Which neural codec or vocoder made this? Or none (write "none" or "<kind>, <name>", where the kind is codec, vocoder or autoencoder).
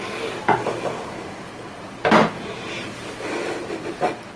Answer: none